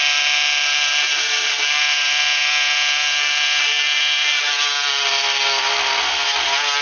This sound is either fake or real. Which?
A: real